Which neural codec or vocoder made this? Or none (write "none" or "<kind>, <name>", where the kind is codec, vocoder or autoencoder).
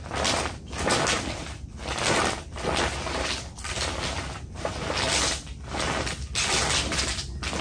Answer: none